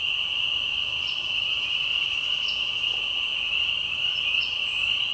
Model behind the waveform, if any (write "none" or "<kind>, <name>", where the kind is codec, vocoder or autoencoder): none